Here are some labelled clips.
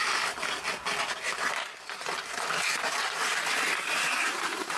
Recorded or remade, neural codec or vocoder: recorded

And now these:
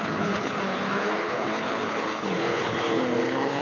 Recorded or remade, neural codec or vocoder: remade, codec, HILCodec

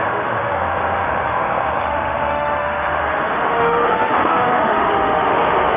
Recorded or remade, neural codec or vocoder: remade, autoencoder, DAC-VAE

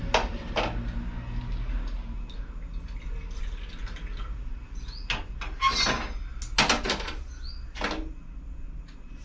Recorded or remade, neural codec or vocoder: recorded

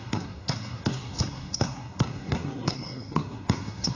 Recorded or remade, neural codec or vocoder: remade, codec, SNAC